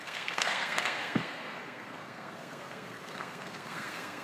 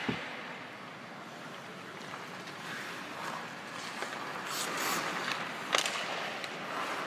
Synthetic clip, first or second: first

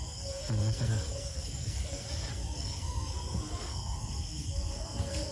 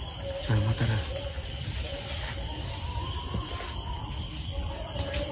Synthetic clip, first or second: first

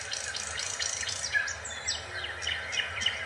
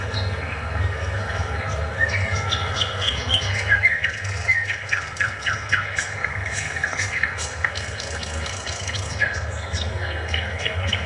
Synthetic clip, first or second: second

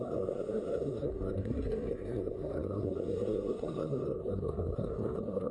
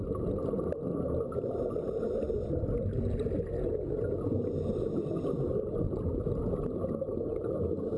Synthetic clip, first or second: first